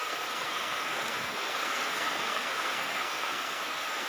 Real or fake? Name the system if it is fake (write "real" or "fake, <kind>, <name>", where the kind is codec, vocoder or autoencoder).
fake, codec, SNAC